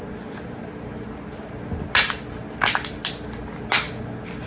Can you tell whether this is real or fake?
real